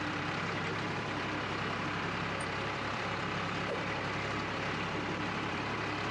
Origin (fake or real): fake